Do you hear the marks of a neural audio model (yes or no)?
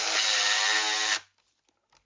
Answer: no